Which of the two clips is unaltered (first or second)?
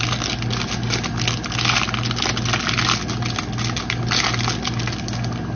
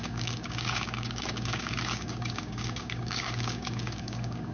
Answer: first